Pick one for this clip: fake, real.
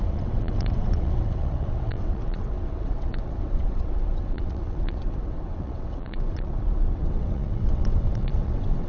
fake